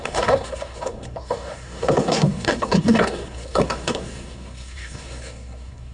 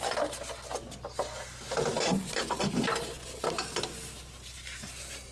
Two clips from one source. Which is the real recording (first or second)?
second